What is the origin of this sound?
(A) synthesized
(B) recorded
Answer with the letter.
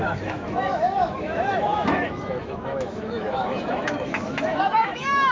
A